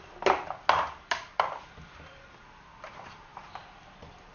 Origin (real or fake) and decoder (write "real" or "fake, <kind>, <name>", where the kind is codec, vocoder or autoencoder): real